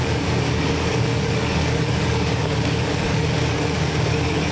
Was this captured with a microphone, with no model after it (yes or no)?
no